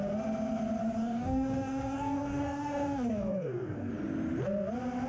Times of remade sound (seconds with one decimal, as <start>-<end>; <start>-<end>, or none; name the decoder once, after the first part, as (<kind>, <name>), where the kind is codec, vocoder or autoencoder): 0.8-3.9 (codec, DAC)